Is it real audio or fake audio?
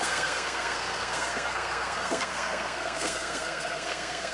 fake